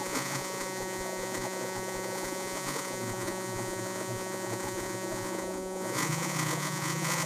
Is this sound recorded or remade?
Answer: remade